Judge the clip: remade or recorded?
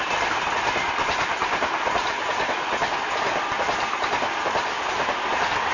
recorded